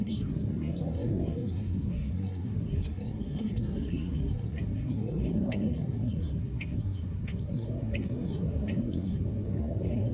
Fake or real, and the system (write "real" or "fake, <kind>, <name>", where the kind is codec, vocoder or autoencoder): fake, codec, SNAC